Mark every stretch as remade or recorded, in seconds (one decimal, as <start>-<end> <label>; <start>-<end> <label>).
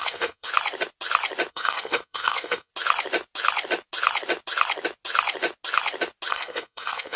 0.0-0.5 remade; 0.5-1.5 recorded; 1.5-2.7 remade; 2.7-6.3 recorded; 6.3-7.2 remade